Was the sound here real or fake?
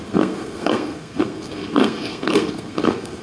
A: fake